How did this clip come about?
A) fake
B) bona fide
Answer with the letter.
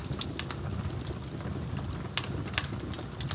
B